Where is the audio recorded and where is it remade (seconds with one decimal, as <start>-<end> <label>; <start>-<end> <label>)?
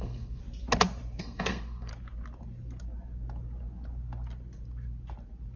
0.0-0.4 remade; 0.4-1.2 recorded; 1.2-1.9 remade; 1.9-5.6 recorded